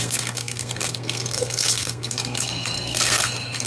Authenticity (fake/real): fake